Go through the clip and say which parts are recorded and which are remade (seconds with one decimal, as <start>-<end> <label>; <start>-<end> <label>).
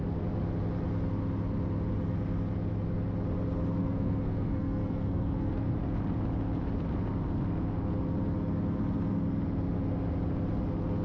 0.0-3.8 recorded; 3.8-5.7 remade; 5.7-11.0 recorded